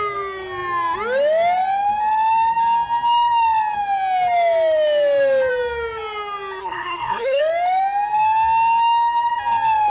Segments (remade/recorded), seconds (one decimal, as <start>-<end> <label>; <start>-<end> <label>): 0.0-6.6 recorded; 6.6-7.4 remade; 7.4-9.9 recorded